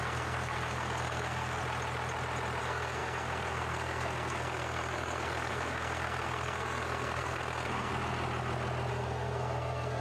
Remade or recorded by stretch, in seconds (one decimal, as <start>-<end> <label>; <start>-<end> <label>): 0.0-1.6 remade; 1.6-2.6 recorded; 2.6-7.9 remade; 7.9-8.9 recorded; 8.9-10.0 remade